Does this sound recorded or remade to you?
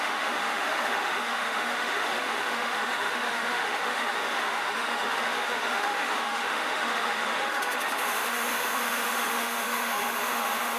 remade